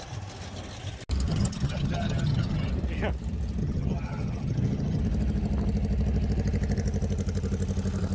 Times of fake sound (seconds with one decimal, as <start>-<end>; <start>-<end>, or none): 1.3-2.7; 3.6-5.0